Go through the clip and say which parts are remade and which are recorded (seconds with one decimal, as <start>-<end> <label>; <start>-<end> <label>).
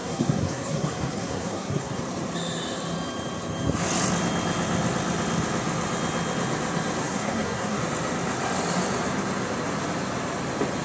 0.0-2.0 remade; 2.0-7.0 recorded; 7.0-7.8 remade; 7.8-10.8 recorded